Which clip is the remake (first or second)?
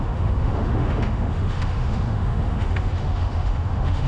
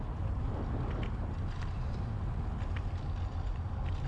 first